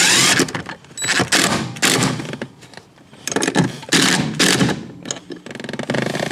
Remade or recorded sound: recorded